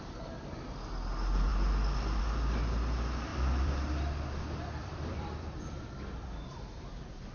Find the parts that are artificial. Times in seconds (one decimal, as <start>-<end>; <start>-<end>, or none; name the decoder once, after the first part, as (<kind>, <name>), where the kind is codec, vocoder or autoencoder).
3.3-3.9 (vocoder, BigVGAN v2); 4.8-7.3